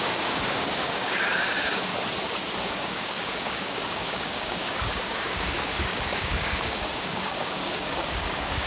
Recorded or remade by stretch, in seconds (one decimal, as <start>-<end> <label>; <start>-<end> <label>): 0.0-1.9 remade; 1.9-2.6 recorded; 2.6-8.7 remade